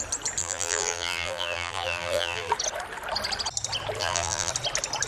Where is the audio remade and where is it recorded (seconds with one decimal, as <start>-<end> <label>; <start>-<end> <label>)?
0.0-0.4 recorded; 0.4-2.5 remade; 2.5-4.0 recorded; 4.0-4.5 remade; 4.5-5.1 recorded